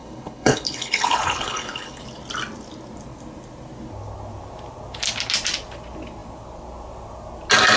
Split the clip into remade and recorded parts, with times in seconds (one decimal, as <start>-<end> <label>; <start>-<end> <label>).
0.0-2.0 remade; 2.0-7.8 recorded